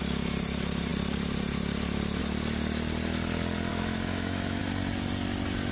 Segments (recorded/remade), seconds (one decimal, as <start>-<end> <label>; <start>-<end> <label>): 0.0-3.7 recorded; 3.7-4.6 remade; 4.6-5.7 recorded